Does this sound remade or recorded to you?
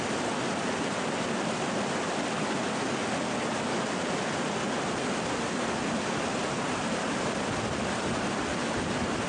recorded